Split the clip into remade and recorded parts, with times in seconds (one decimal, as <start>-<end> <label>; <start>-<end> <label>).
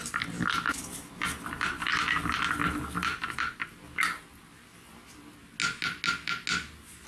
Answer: 0.0-7.1 recorded